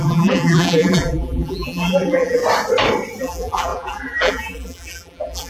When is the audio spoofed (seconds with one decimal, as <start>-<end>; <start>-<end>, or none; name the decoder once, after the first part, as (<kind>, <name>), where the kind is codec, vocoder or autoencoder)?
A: 0.0-2.4 (vocoder, BigVGAN v2); 3.2-5.5